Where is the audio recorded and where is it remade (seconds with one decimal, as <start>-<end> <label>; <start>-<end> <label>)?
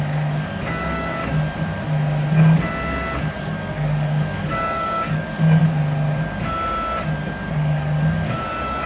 0.0-1.2 remade; 1.2-3.4 recorded; 3.4-5.6 remade; 5.6-7.5 recorded; 7.5-8.9 remade